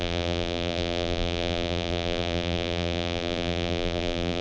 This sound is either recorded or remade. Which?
remade